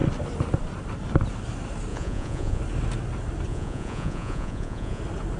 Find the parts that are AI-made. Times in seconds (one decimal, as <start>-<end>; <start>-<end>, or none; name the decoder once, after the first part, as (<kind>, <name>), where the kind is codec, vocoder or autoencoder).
1.9-2.6 (vocoder, Vocos); 3.5-5.0